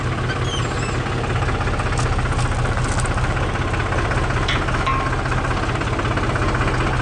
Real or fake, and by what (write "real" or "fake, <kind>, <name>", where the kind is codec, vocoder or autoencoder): real